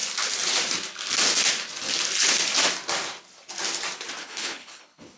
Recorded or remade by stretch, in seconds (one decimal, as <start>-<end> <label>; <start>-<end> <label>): 0.0-4.2 recorded; 4.2-5.2 remade